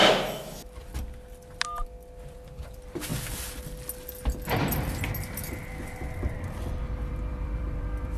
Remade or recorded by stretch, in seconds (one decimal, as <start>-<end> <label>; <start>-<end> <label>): 0.0-2.2 recorded; 2.2-3.1 remade; 3.1-6.3 recorded; 6.3-8.2 remade